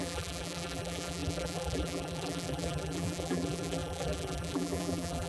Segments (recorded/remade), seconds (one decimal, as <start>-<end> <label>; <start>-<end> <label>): 0.0-5.3 remade